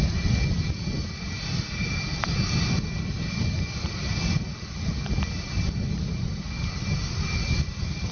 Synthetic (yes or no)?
no